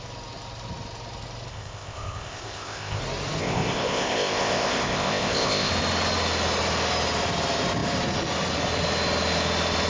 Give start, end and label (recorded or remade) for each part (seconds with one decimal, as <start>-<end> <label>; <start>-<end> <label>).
0.0-1.5 recorded; 1.5-3.0 remade; 3.0-3.4 recorded; 3.4-5.7 remade; 5.7-9.9 recorded